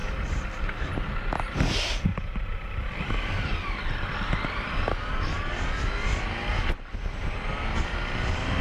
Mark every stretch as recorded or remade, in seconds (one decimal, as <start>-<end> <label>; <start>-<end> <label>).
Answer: 0.0-8.6 recorded

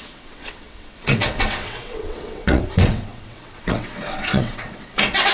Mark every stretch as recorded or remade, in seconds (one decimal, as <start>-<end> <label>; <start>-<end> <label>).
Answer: 0.0-5.3 remade

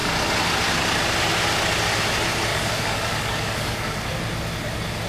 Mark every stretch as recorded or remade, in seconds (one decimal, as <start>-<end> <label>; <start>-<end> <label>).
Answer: 0.0-2.5 recorded; 2.5-4.1 remade; 4.1-5.1 recorded

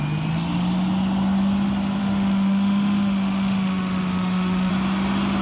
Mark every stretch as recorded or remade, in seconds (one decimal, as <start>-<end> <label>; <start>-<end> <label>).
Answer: 0.0-2.0 recorded; 2.0-4.7 remade; 4.7-5.4 recorded

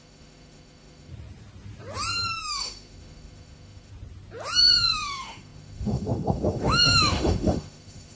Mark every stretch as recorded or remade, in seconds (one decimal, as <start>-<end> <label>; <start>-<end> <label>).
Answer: 0.0-1.1 remade; 1.1-2.3 recorded; 2.3-3.9 remade; 3.9-4.6 recorded; 4.6-8.2 remade

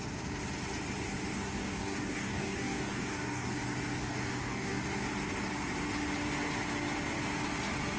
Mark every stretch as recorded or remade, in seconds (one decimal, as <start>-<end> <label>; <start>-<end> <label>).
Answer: 0.0-1.3 recorded; 1.3-3.5 remade; 3.5-4.0 recorded; 4.0-4.8 remade; 4.8-8.0 recorded

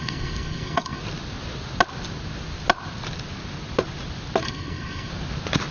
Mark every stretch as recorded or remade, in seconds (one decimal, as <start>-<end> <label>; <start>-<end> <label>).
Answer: 0.0-1.0 remade; 1.0-4.4 recorded; 4.4-5.1 remade; 5.1-5.7 recorded